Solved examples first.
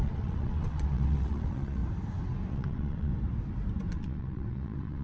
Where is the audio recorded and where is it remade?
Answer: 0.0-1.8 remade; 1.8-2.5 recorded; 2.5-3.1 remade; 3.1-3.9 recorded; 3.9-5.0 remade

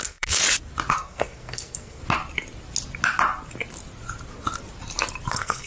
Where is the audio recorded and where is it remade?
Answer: 0.0-0.4 remade; 0.4-0.9 recorded; 0.9-2.0 remade; 2.0-5.3 recorded; 5.3-5.7 remade

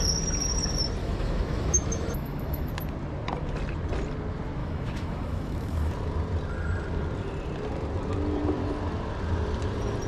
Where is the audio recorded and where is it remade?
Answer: 0.0-1.0 recorded; 1.0-2.7 remade; 2.7-4.6 recorded; 4.6-5.9 remade; 5.9-10.1 recorded

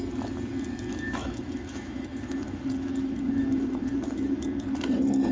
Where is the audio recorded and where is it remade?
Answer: 0.0-1.2 recorded; 1.2-4.4 remade; 4.4-5.3 recorded

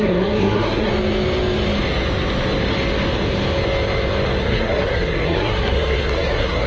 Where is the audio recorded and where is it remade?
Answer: 0.0-0.9 remade; 0.9-4.4 recorded; 4.4-6.7 remade

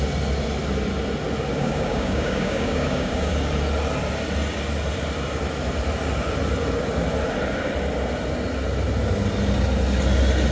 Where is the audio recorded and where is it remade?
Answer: 0.0-1.5 recorded; 1.5-3.3 remade; 3.3-10.5 recorded